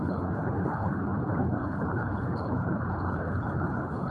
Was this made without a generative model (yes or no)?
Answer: no